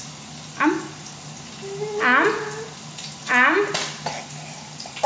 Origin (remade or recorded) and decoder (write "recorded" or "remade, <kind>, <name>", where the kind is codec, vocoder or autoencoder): recorded